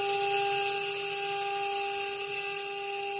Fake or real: real